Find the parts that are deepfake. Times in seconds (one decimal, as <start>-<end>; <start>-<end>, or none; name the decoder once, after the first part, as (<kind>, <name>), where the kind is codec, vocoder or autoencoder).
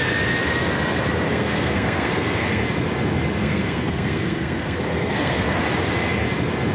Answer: 1.3-2.6 (codec, SNAC); 3.4-5.6